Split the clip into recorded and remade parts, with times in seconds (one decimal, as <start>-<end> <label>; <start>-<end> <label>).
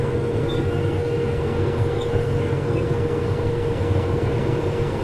0.0-5.0 remade